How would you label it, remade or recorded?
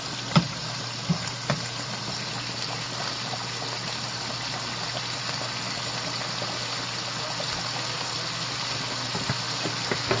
recorded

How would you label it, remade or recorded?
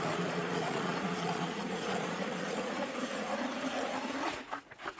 remade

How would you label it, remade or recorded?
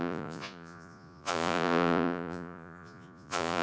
remade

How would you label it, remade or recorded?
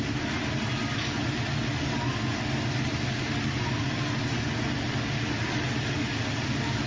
recorded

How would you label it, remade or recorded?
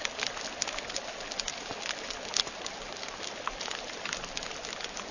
recorded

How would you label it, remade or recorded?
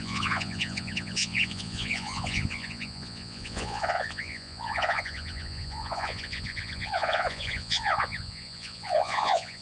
remade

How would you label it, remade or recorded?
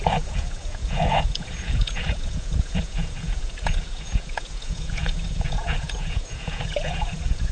remade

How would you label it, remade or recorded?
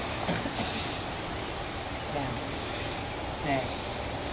recorded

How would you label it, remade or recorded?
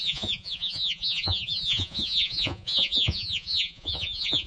remade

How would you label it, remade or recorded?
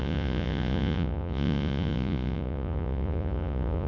remade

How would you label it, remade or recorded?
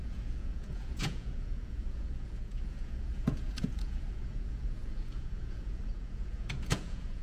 remade